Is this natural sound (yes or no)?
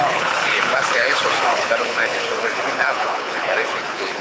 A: no